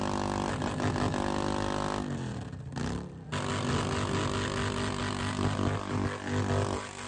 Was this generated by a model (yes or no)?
no